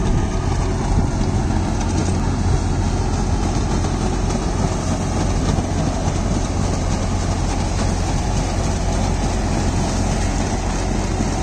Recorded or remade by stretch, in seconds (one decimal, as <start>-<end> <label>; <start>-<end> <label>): 0.0-11.4 recorded